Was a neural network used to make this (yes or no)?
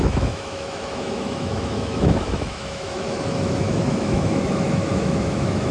yes